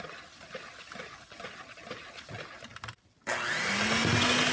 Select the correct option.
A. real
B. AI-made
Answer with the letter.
A